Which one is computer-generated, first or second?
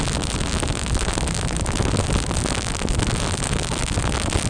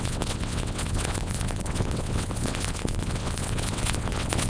second